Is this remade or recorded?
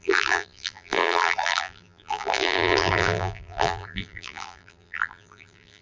remade